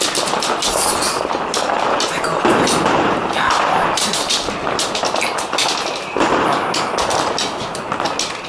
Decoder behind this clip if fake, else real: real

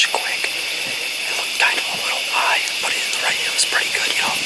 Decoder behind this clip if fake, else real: real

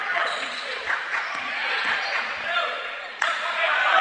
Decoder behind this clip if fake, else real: fake, vocoder, Vocos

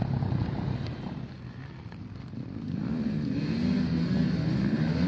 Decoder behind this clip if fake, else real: real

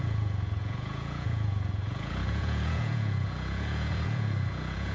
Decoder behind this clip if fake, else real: fake, vocoder, Vocos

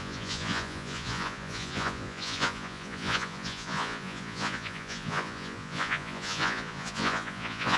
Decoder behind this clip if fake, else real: fake, vocoder, Vocos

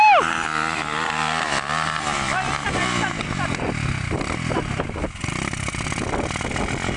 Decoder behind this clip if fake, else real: real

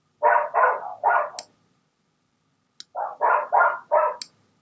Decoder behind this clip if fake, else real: real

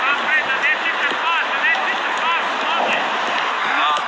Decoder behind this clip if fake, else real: real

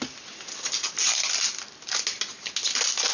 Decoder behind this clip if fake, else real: real